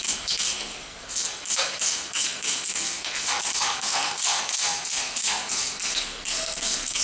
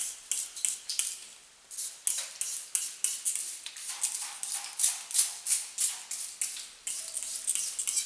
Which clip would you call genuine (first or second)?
second